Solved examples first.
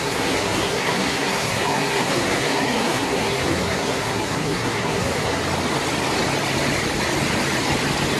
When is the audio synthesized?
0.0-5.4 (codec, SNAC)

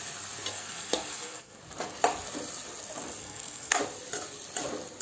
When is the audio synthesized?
0.5-1.6 (codec, SNAC); 3.2-3.8

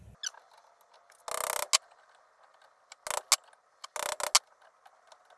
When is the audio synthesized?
none

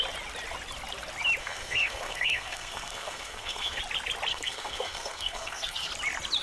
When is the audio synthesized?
1.4-3.8 (codec, SNAC); 4.3-5.9

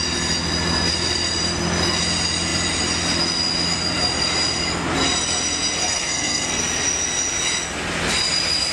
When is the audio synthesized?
5.8-6.6 (codec, SNAC)